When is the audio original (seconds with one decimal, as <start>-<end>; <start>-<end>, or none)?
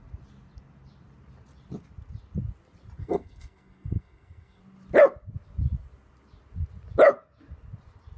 0.0-3.0; 4.6-8.2